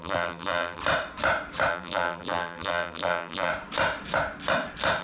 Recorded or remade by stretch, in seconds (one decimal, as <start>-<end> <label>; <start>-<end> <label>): 0.0-0.8 remade; 0.8-1.7 recorded; 1.7-3.5 remade; 3.5-5.0 recorded